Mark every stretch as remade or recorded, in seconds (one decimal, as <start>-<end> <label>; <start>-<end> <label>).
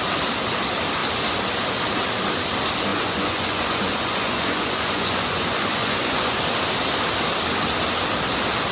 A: 0.0-2.9 recorded; 2.9-6.4 remade; 6.4-8.7 recorded